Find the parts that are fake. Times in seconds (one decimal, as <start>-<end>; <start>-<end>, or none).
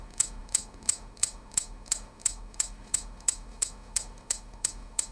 0.0-5.1